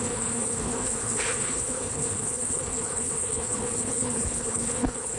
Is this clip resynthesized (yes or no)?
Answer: yes